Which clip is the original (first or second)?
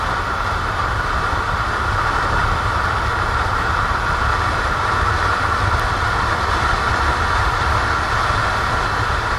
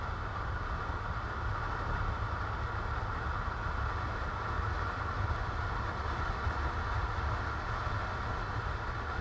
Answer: second